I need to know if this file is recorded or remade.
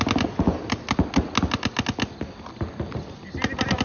recorded